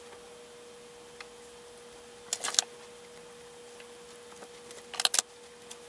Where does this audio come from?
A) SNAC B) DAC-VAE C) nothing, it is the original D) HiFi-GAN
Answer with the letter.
C